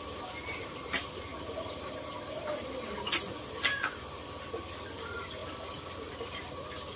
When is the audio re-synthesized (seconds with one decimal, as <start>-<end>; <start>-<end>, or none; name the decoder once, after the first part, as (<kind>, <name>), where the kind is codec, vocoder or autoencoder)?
none